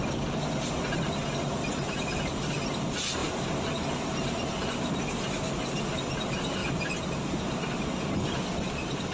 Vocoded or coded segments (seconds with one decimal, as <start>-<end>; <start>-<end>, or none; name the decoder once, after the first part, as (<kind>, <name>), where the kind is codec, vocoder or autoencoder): none